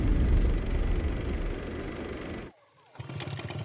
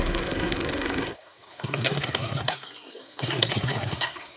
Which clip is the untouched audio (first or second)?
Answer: first